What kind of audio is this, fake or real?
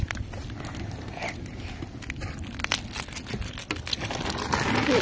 real